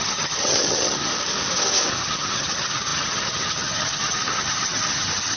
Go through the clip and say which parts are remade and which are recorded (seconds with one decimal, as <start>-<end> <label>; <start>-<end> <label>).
0.0-1.1 remade; 1.1-1.9 recorded; 1.9-5.4 remade

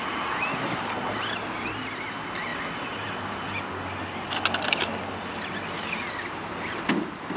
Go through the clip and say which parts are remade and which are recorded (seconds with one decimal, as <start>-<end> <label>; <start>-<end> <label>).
0.0-7.4 recorded